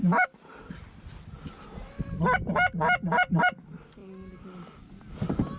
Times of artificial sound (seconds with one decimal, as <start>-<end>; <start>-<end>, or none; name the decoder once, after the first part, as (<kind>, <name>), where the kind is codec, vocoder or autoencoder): none